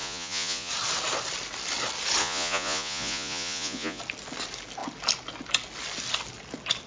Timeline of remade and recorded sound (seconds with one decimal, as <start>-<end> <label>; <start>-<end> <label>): 0.0-0.7 remade; 0.7-2.2 recorded; 2.2-4.0 remade; 4.0-6.9 recorded